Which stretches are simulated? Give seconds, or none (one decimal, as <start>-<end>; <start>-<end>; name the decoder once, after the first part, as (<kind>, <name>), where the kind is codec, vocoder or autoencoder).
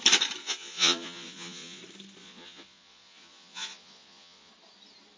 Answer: 0.4-1.8 (vocoder, Vocos); 2.2-4.5